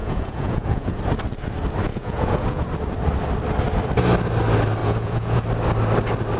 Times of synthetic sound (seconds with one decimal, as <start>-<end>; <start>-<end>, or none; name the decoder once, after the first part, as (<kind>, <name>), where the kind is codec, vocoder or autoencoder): 0.0-1.0 (vocoder, Vocos); 1.9-2.6; 4.8-5.4